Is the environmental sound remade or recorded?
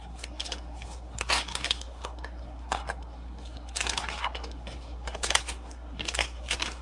remade